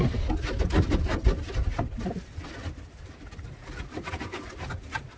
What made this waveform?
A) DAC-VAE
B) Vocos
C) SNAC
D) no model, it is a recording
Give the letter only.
D